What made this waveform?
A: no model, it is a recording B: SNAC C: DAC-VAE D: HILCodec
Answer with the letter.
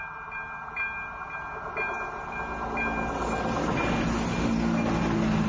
A